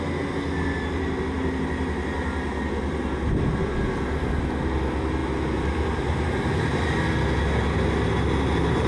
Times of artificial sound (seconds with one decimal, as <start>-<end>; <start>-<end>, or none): none

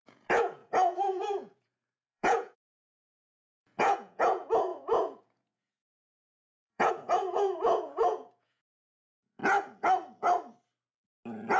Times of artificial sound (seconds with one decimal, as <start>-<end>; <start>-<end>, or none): 0.0-9.4

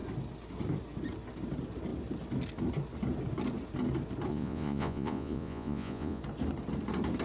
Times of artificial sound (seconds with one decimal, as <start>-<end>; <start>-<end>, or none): 4.3-6.2

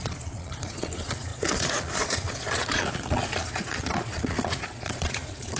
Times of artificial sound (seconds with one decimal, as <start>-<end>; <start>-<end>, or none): 0.0-5.6

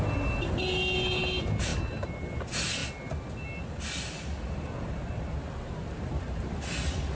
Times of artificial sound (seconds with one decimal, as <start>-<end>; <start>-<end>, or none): none